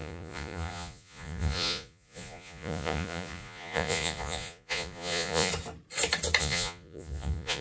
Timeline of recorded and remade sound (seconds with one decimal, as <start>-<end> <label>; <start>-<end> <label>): 0.0-5.5 remade; 5.5-6.4 recorded; 6.4-7.6 remade